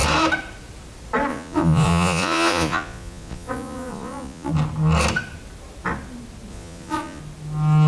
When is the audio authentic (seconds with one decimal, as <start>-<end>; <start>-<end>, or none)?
0.0-1.3; 4.5-6.5; 7.2-7.9